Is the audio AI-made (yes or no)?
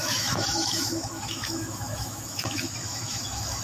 yes